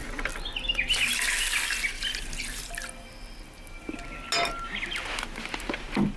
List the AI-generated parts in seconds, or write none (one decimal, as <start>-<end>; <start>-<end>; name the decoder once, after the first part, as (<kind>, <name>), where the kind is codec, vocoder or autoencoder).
none